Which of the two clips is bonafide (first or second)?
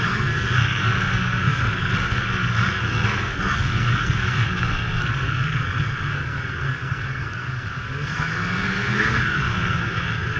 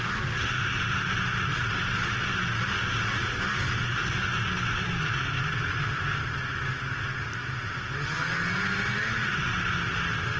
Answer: second